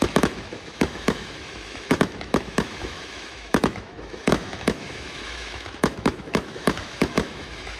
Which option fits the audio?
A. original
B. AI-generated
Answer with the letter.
B